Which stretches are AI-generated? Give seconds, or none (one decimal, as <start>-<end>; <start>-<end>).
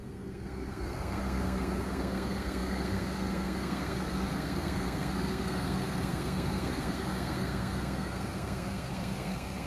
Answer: 0.0-9.7